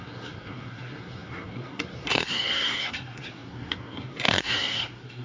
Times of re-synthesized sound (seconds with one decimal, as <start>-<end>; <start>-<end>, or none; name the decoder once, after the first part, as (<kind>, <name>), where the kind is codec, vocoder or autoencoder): 0.0-5.2 (codec, SNAC)

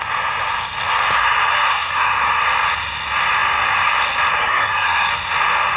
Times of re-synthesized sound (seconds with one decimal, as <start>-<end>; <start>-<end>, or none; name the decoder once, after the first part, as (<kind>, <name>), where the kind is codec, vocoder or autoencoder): 1.7-2.4 (codec, SNAC); 4.4-5.1

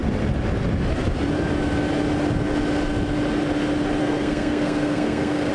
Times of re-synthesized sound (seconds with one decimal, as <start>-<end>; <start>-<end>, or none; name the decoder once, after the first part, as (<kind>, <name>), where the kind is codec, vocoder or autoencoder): 4.0-5.5 (codec, SNAC)

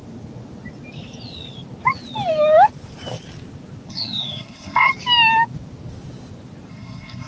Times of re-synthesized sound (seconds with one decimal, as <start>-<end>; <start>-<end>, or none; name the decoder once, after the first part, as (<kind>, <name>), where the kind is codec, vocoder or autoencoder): 3.9-4.9 (codec, SNAC); 6.7-7.3

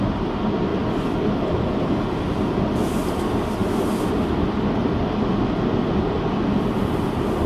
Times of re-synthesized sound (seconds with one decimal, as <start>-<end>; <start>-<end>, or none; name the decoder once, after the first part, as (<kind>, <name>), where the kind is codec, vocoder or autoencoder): none

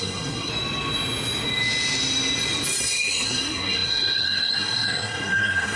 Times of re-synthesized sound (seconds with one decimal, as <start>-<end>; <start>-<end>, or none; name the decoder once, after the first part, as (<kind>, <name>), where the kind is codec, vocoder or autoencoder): 0.0-0.5 (codec, SNAC); 2.8-5.8

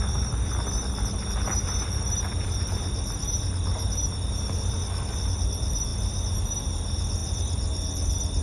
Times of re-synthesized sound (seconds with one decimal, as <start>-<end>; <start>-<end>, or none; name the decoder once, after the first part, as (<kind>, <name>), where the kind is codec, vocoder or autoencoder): none

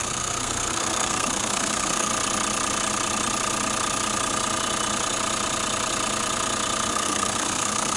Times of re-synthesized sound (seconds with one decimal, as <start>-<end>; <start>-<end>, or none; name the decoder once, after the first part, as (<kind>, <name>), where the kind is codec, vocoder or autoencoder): 0.0-2.1 (codec, SNAC); 6.9-8.0